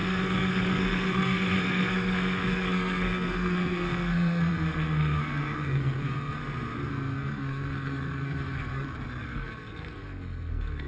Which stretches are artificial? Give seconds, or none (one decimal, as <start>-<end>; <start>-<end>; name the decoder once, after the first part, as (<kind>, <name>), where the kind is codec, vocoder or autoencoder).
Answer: 0.0-6.4 (codec, SNAC); 6.9-10.9